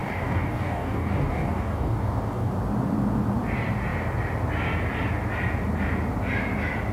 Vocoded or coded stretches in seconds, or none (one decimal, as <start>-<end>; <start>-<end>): 0.0-2.5